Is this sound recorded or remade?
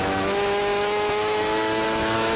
remade